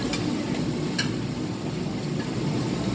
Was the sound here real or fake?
real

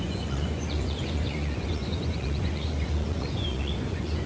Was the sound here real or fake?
fake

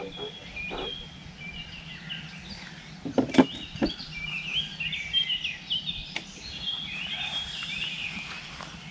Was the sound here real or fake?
real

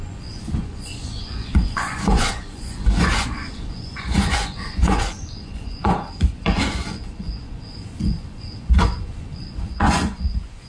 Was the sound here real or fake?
fake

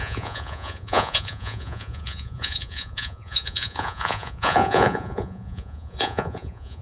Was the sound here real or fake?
fake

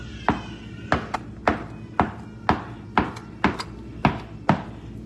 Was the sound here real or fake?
real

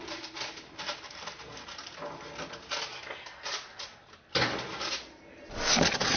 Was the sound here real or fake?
real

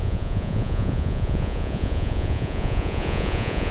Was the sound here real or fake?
fake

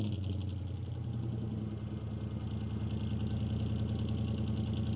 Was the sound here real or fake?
real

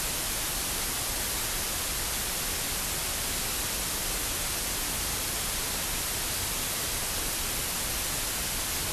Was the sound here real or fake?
real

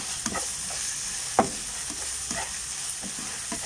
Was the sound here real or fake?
real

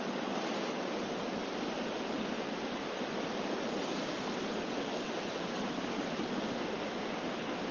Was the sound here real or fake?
real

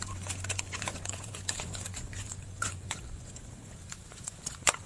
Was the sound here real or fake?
fake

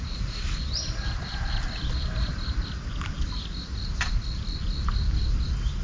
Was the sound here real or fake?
real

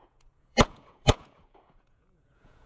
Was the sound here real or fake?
fake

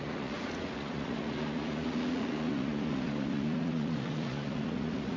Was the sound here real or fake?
fake